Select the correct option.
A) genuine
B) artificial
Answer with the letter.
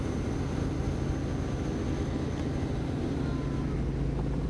A